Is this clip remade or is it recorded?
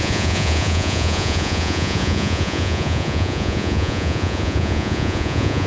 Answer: remade